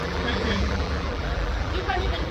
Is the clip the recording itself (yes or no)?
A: no